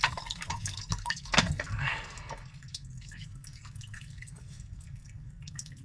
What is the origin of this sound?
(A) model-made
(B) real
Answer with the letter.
A